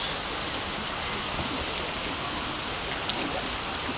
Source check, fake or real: real